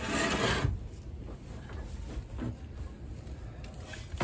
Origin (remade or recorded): recorded